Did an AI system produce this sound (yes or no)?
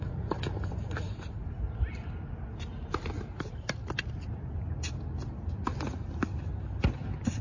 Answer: no